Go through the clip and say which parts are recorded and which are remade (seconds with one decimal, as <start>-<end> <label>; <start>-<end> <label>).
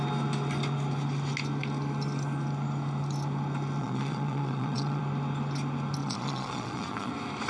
0.0-3.8 recorded; 3.8-5.0 remade; 5.0-6.0 recorded; 6.0-7.1 remade; 7.1-7.5 recorded